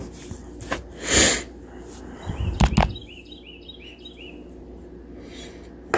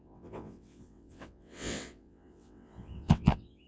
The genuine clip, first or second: first